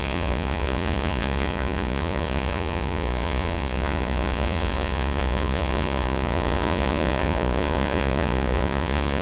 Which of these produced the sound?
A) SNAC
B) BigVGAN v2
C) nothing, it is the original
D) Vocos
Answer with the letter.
D